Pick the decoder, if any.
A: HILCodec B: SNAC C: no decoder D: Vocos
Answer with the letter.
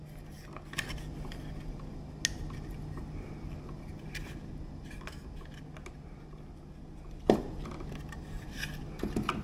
C